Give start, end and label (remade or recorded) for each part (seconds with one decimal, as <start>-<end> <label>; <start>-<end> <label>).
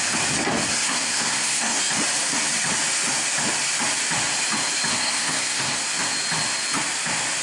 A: 0.0-0.7 recorded; 0.7-1.8 remade; 1.8-4.9 recorded; 4.9-5.8 remade; 5.8-7.4 recorded